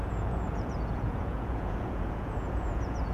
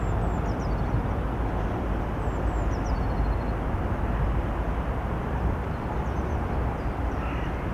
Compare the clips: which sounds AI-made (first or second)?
first